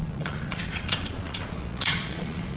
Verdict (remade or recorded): remade